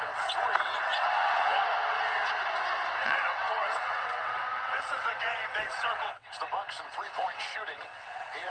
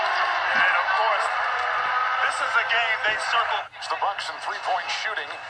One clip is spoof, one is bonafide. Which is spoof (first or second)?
first